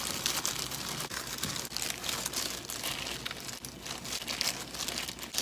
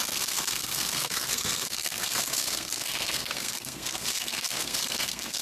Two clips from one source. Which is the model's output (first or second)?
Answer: second